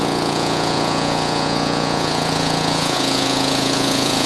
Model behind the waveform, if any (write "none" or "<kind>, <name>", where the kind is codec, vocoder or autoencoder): vocoder, Vocos